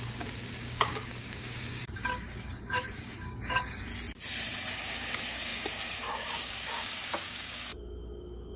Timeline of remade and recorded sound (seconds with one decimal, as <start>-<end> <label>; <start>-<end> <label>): 0.0-3.9 remade; 3.9-4.7 recorded; 4.7-8.6 remade